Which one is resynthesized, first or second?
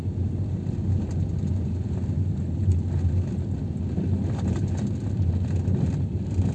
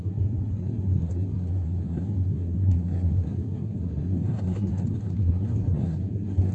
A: second